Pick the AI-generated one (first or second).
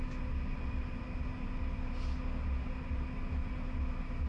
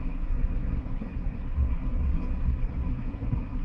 second